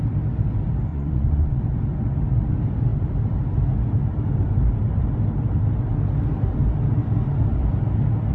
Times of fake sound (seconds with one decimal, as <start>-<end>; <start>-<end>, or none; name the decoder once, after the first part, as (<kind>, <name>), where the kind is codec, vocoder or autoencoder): 0.9-1.6 (vocoder, Vocos)